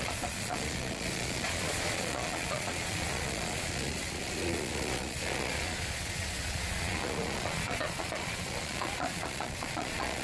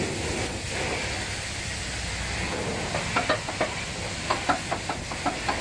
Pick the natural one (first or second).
second